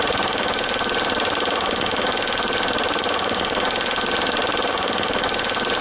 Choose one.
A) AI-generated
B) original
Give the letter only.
B